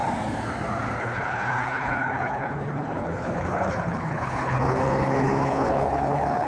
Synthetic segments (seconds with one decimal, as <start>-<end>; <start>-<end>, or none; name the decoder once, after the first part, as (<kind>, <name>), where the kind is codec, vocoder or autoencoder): 1.0-6.5 (codec, HILCodec)